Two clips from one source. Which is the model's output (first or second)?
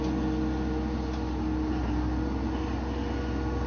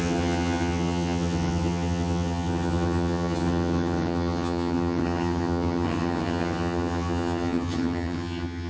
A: second